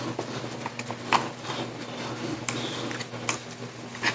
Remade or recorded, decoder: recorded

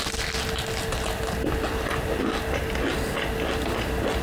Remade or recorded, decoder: recorded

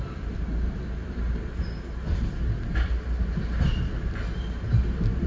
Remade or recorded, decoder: recorded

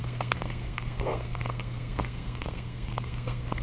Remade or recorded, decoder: remade, codec, SNAC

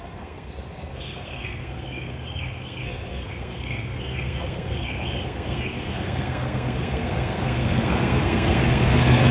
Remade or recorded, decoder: remade, codec, SNAC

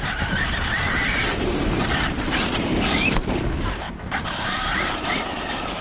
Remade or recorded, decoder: remade, vocoder, BigVGAN v2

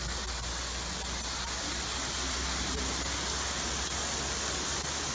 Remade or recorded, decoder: recorded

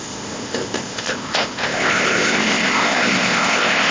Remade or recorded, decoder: remade, codec, ZipCodec